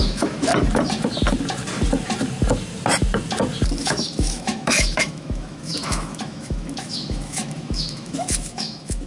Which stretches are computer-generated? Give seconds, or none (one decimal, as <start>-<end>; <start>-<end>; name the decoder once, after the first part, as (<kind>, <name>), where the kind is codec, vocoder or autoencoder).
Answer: 0.0-0.5 (autoencoder, DAC-VAE); 3.8-9.1